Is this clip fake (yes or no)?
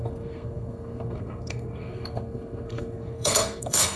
yes